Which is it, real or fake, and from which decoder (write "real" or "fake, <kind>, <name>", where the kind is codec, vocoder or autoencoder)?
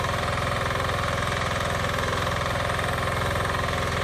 fake, vocoder, BigVGAN v2